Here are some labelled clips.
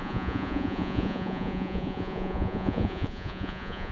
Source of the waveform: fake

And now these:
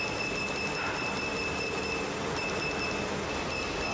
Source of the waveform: real